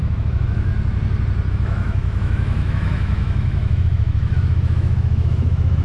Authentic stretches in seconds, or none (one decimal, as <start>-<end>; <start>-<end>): 0.7-1.5